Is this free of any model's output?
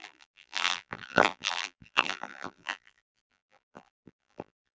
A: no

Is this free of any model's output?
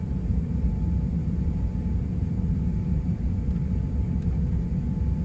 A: yes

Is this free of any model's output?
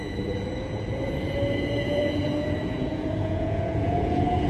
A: no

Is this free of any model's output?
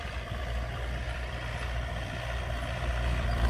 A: no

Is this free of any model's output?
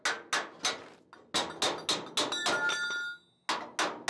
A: yes